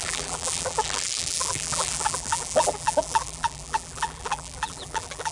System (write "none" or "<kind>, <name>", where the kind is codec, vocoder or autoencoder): vocoder, BigVGAN v2